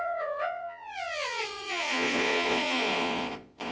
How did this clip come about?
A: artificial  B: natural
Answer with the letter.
A